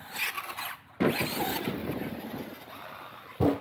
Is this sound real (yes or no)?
yes